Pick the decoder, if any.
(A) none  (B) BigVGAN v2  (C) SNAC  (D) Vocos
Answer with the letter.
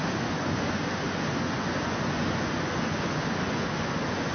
D